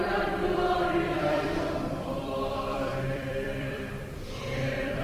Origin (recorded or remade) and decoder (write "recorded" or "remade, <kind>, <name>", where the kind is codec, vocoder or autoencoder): remade, vocoder, BigVGAN v2